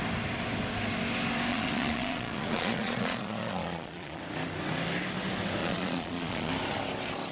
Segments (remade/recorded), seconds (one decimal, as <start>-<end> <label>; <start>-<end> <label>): 0.0-1.5 recorded; 1.5-4.2 remade; 4.2-5.6 recorded; 5.6-6.5 remade; 6.5-7.3 recorded